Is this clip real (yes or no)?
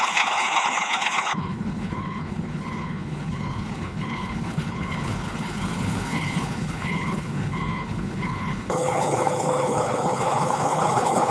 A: no